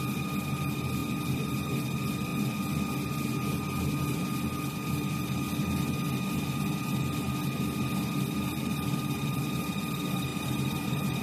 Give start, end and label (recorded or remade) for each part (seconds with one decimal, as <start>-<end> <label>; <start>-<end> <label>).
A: 0.0-8.5 recorded; 8.5-9.8 remade; 9.8-10.3 recorded; 10.3-11.2 remade